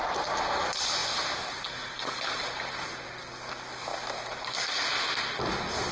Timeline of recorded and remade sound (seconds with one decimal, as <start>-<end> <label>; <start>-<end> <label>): 0.0-3.9 recorded; 3.9-4.5 remade; 4.5-5.9 recorded